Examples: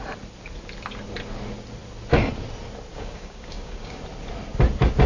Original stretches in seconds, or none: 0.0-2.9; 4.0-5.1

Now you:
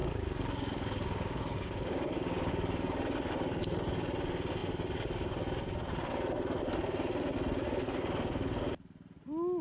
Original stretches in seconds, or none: 2.5-9.6

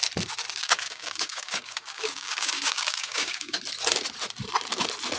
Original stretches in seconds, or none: 0.0-0.6; 3.6-5.2

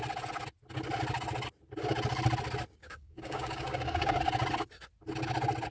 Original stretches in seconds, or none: 0.0-2.8; 4.2-5.7

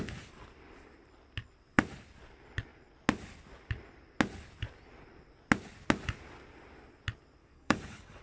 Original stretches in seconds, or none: 0.0-7.4

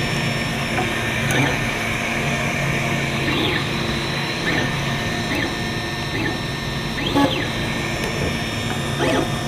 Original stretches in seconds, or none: 0.0-0.5; 5.2-9.5

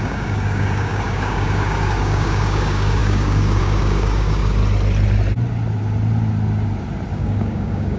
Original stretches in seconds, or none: 4.6-7.1